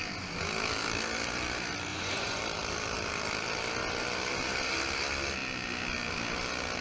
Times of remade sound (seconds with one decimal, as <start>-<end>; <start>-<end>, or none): 1.9-2.4